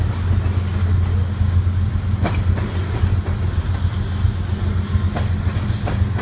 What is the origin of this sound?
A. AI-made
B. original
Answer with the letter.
B